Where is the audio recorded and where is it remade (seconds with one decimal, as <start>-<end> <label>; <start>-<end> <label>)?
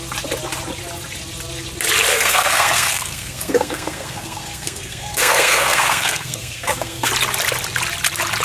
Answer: 0.0-2.1 recorded; 2.1-7.1 remade; 7.1-8.4 recorded